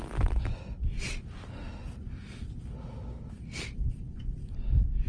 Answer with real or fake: real